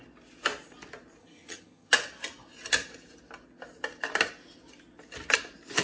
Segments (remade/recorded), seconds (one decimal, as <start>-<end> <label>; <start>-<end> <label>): 0.0-1.2 recorded; 1.2-1.9 remade; 1.9-5.8 recorded